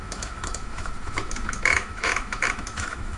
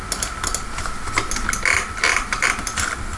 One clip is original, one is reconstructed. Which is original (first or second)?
second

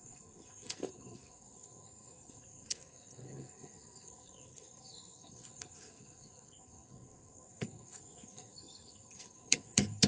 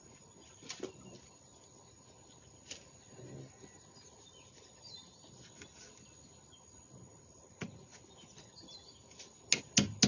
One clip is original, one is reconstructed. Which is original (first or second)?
second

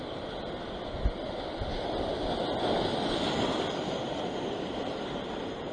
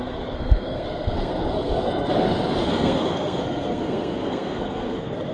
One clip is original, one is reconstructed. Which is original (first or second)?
first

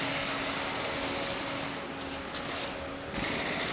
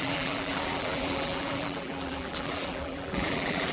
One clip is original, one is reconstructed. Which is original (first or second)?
first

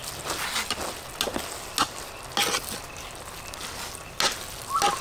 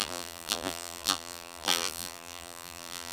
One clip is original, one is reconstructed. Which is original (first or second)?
first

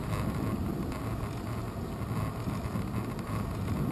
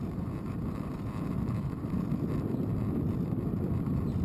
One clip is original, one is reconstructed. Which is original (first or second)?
first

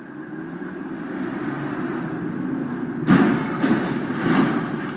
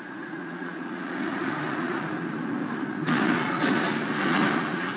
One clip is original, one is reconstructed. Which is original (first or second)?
first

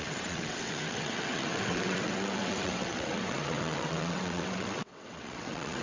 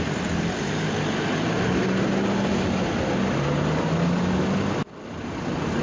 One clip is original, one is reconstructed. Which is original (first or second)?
second